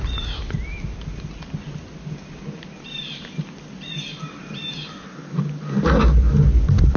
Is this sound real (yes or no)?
yes